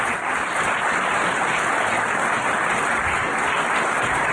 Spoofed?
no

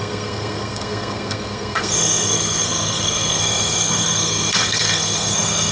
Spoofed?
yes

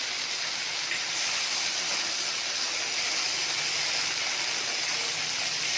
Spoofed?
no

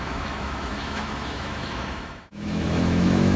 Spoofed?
yes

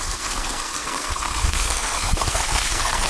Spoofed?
yes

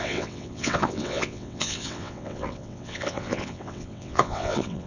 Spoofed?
yes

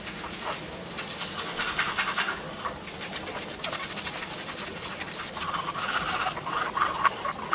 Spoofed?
no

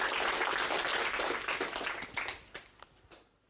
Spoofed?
no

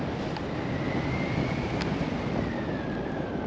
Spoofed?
no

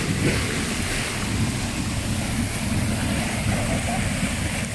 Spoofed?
no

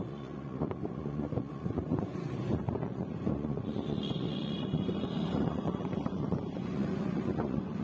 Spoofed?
yes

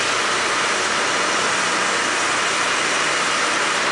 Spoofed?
no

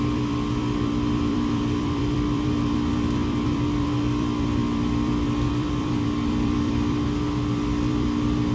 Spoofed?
yes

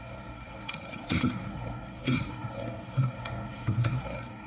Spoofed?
yes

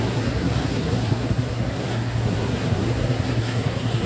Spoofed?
yes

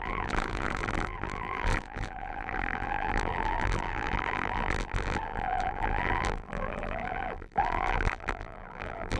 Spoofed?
yes